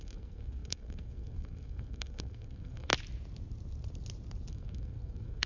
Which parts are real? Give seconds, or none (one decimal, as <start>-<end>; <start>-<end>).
2.9-4.5